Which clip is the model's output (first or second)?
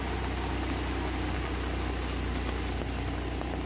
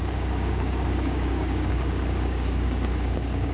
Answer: second